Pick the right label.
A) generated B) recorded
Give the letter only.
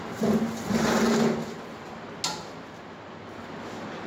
B